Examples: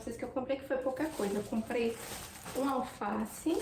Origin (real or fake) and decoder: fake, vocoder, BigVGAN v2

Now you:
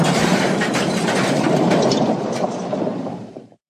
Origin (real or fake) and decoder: fake, vocoder, BigVGAN v2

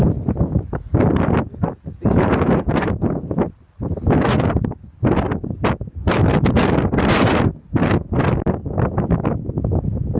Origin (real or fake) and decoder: real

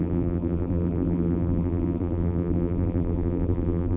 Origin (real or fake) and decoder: fake, vocoder, BigVGAN v2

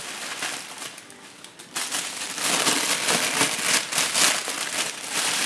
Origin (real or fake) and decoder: real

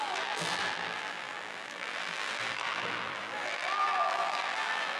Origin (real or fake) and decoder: fake, vocoder, BigVGAN v2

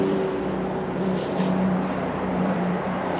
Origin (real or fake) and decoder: fake, vocoder, BigVGAN v2